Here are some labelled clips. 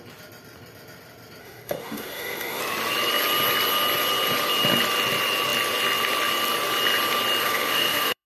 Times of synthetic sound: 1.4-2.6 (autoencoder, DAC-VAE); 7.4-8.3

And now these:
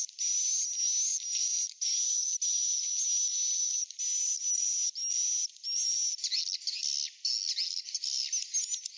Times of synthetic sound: none

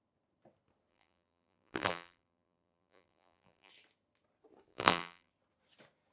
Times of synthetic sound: 0.9-3.7 (vocoder, BigVGAN v2); 4.7-5.3